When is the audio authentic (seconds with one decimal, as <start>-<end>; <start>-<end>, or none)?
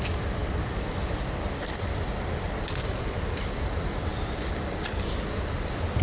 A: 0.0-0.4; 1.2-4.1; 5.1-6.0